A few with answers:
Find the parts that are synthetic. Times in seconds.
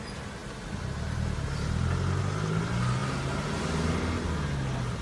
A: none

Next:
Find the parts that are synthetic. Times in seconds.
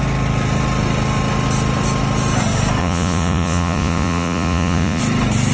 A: 2.8-5.0 (vocoder, Vocos)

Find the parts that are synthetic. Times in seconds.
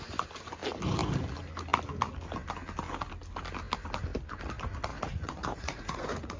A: 4.9-6.4 (vocoder, Vocos)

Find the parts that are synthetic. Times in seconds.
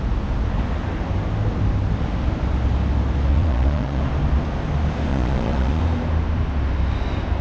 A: 3.3-4.0 (vocoder, Vocos); 5.1-5.8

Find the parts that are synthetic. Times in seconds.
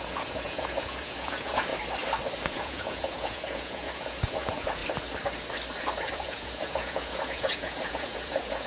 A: 0.0-1.7 (vocoder, Vocos); 2.5-4.8; 6.1-8.7